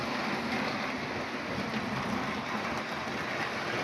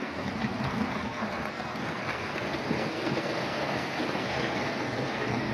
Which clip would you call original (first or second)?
first